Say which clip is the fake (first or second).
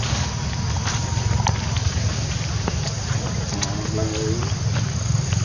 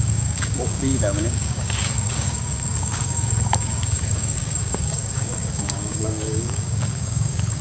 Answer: second